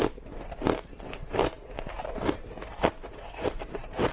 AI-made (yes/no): no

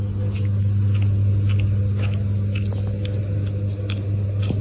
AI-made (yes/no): no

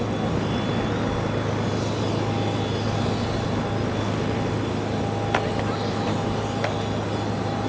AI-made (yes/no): no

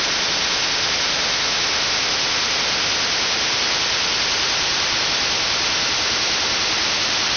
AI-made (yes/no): no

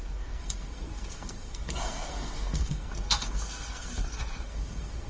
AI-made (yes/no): yes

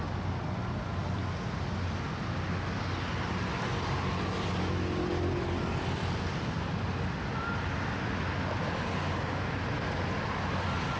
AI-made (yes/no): no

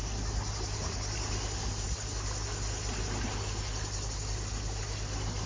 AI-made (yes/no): no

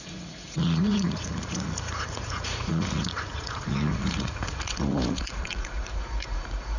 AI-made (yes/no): yes